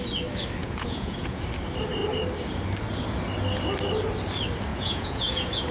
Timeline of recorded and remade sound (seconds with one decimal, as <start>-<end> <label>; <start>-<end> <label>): 0.0-0.6 recorded; 0.6-1.4 remade; 1.4-4.7 recorded; 4.7-5.7 remade